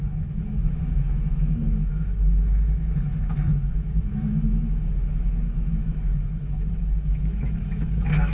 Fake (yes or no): yes